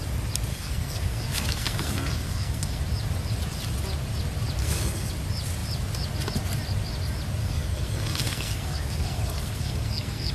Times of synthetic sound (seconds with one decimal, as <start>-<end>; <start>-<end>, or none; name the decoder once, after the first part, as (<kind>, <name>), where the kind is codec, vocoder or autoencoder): 0.5-2.8 (codec, SNAC); 4.6-5.1; 7.4-10.3